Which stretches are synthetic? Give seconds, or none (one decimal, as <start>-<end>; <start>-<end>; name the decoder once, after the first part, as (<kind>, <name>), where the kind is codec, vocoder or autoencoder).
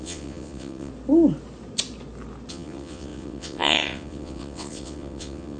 0.0-0.9 (vocoder, WaveNeXt); 2.5-5.6